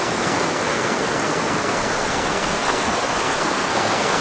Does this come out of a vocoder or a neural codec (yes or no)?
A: yes